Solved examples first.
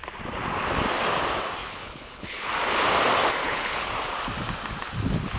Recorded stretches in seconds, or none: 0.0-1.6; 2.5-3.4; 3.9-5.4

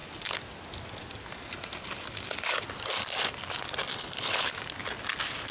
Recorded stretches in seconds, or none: 0.0-3.9; 4.5-5.5

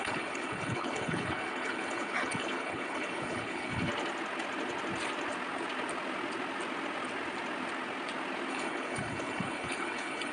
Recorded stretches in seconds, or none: 3.9-8.5

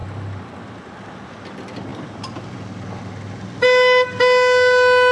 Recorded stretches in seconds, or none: 0.0-5.1

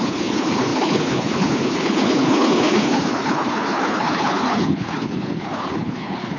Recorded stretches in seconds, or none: none

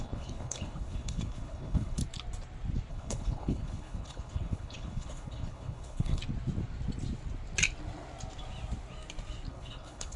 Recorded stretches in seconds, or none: 2.0-2.9; 6.2-9.5

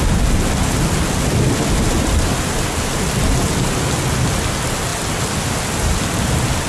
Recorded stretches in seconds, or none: 0.0-6.7

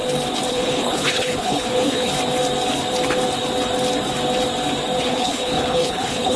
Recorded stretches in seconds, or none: 0.0-0.5; 2.1-5.0